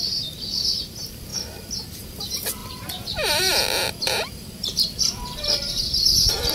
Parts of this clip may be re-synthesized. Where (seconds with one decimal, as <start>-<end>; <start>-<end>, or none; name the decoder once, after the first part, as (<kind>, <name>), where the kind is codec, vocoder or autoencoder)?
1.3-2.2 (vocoder, BigVGAN v2); 2.6-6.5